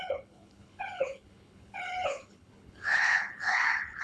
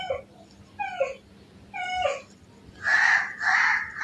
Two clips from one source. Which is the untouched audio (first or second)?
second